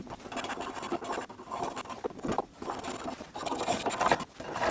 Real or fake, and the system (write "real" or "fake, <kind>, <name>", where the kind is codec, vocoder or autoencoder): real